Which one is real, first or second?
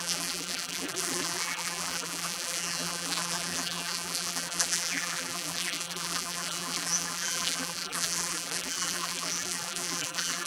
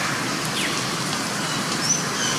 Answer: second